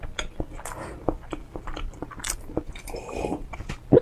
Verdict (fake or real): real